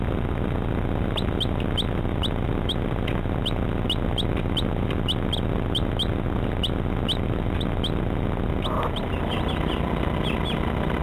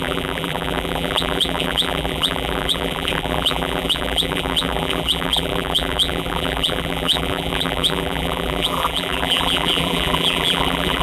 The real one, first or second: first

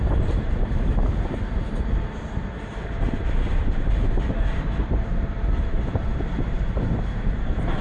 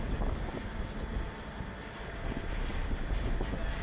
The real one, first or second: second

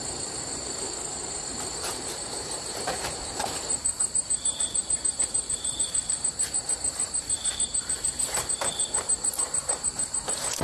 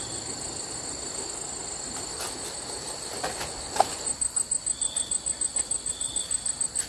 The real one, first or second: second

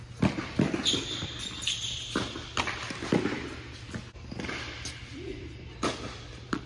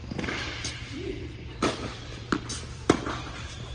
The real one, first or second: first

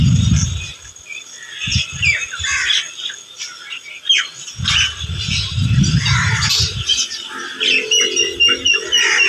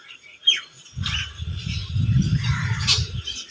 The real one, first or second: first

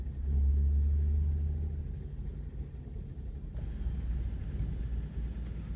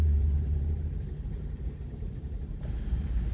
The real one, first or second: first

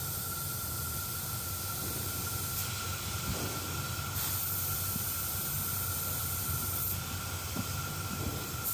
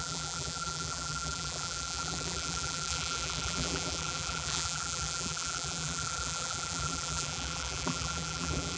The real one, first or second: first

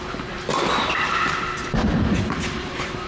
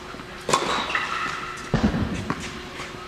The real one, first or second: second